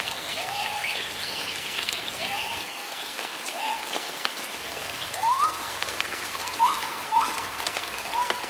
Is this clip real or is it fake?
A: fake